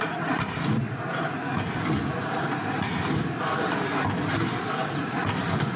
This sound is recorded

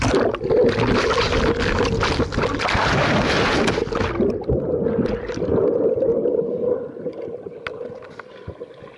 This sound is recorded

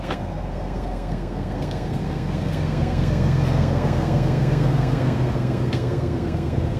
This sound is remade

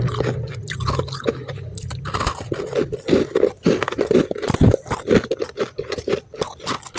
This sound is recorded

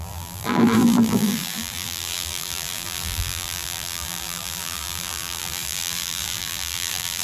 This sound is remade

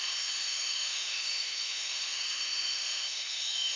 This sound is remade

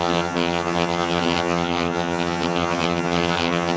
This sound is remade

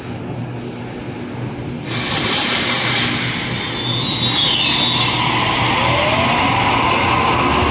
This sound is recorded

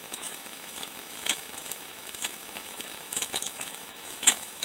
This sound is remade